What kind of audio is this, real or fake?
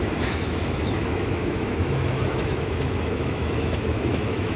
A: fake